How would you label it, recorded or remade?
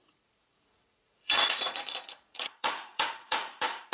remade